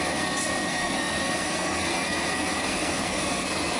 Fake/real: fake